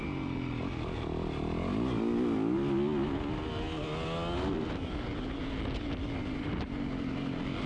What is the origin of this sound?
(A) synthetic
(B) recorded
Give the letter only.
B